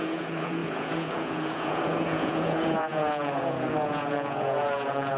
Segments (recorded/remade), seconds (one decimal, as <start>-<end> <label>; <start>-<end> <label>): 0.0-5.2 remade